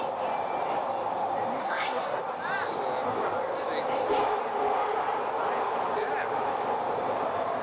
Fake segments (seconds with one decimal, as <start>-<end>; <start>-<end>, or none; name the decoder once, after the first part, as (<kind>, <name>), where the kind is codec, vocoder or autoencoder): 1.6-2.2 (codec, SNAC)